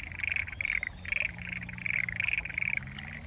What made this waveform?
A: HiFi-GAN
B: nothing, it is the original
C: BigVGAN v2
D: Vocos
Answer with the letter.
B